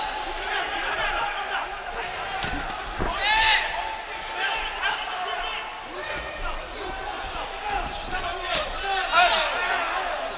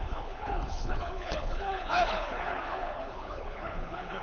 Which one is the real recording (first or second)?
first